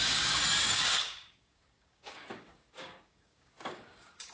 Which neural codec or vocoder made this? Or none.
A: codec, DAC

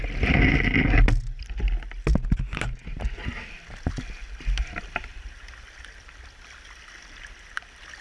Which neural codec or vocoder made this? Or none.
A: none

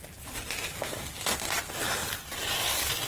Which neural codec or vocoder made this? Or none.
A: none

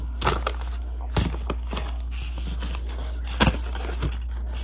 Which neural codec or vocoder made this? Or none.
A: none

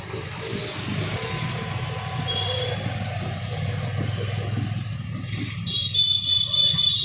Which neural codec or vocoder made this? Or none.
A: none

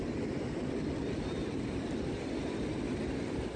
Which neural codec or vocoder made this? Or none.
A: none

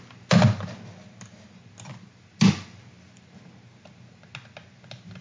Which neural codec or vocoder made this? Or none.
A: none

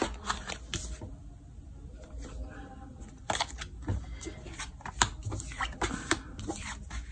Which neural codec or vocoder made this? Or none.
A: none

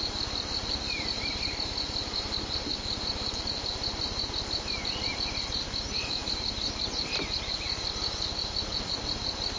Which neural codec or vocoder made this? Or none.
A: vocoder, BigVGAN v2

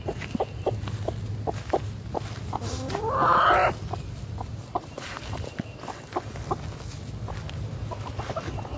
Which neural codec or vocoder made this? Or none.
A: none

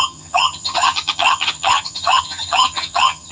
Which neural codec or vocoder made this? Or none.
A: vocoder, HiFi-GAN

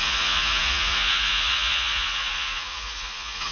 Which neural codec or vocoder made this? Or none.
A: vocoder, Vocos